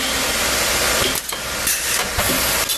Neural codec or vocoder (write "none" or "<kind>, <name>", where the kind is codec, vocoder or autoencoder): none